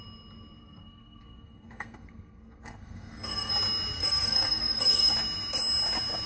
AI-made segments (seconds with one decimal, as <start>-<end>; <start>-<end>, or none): 0.6-3.5; 4.0-5.1

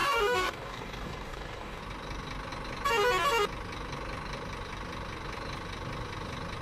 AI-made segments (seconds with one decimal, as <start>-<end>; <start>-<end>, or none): 0.0-1.8

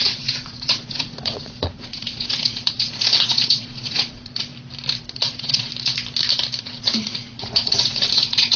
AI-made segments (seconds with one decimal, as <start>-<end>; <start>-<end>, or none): 0.0-4.5; 5.1-5.7; 6.6-8.6

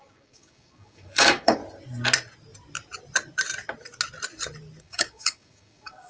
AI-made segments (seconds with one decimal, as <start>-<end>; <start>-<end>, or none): 0.0-1.6; 4.8-6.1

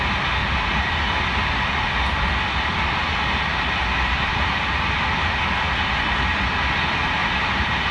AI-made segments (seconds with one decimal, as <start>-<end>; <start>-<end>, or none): 0.4-1.0; 3.5-5.4; 7.0-7.9

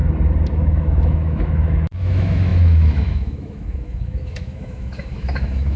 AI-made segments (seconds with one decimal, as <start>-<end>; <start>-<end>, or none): 0.5-5.8